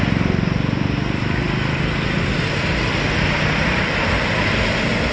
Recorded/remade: recorded